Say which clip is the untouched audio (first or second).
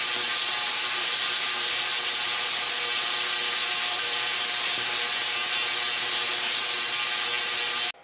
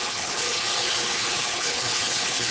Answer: first